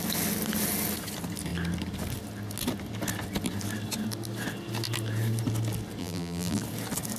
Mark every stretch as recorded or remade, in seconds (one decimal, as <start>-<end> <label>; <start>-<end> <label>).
0.0-6.0 recorded; 6.0-6.6 remade; 6.6-7.2 recorded